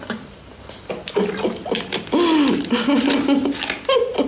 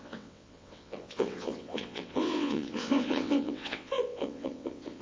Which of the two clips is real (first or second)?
first